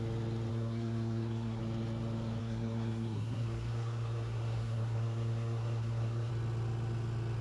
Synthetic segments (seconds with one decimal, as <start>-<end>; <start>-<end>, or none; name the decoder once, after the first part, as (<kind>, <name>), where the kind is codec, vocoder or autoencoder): 0.5-1.6 (codec, SNAC); 2.4-6.3